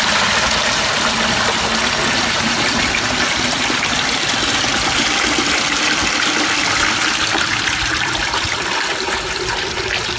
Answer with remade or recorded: remade